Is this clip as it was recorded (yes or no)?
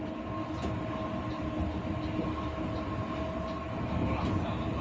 yes